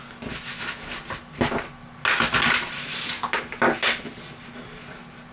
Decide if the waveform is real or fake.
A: real